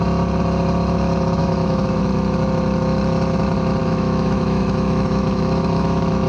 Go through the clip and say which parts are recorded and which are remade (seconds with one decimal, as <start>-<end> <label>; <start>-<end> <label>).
0.0-1.4 recorded; 1.4-2.0 remade; 2.0-3.8 recorded; 3.8-6.3 remade